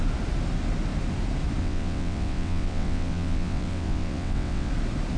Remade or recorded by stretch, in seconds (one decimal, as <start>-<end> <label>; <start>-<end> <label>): 0.0-1.6 recorded; 1.6-4.7 remade; 4.7-5.2 recorded